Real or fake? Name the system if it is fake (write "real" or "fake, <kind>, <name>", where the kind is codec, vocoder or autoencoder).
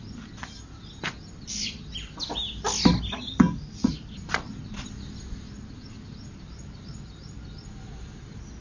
real